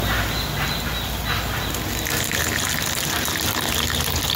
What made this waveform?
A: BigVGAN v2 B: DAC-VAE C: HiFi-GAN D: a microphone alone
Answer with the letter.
D